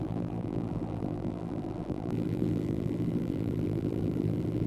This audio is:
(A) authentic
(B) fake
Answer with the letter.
B